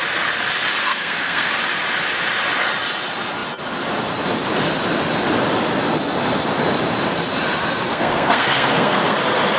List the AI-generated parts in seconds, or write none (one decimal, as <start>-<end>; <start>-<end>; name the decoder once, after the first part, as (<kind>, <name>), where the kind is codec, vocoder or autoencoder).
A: 0.8-1.5 (codec, SNAC); 7.9-9.2